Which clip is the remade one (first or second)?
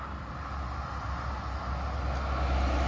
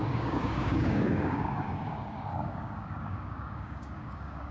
second